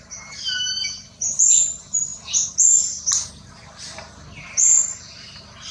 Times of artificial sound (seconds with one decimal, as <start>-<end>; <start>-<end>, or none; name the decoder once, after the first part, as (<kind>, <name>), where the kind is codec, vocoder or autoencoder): 0.0-5.7 (vocoder, BigVGAN v2)